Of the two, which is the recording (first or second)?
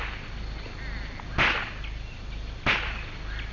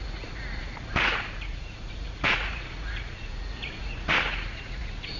first